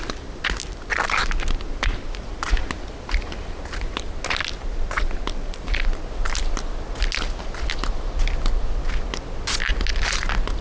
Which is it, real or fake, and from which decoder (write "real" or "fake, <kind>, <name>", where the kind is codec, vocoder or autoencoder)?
real